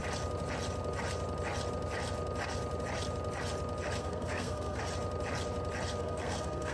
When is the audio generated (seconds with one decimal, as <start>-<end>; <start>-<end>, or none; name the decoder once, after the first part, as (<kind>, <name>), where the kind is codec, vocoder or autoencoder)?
4.0-4.8 (codec, SNAC); 6.0-6.7